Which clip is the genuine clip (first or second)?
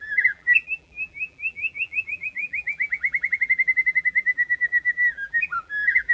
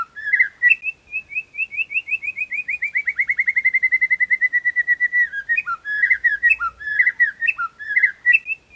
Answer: second